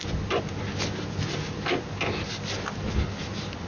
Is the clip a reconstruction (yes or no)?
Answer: no